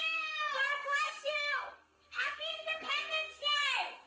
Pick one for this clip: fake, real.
fake